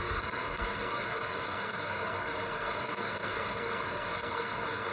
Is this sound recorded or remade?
remade